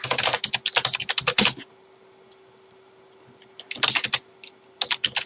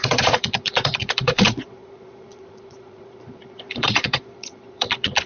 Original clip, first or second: first